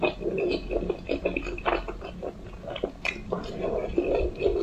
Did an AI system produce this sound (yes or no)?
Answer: no